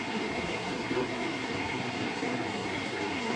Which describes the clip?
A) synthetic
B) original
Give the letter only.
A